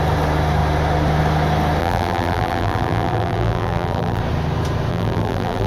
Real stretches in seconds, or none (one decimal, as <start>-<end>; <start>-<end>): 0.0-1.8; 4.2-4.9